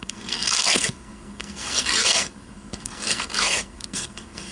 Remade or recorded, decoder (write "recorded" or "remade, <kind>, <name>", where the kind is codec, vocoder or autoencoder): remade, codec, SNAC